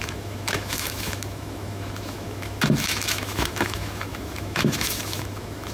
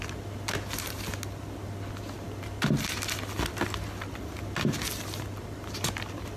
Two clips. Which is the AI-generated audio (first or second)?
first